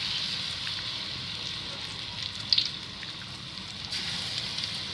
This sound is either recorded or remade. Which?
recorded